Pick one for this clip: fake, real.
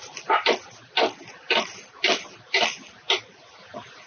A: real